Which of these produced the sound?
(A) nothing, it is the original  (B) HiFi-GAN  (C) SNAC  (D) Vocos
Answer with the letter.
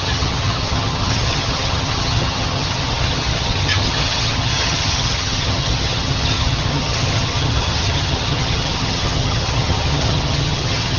B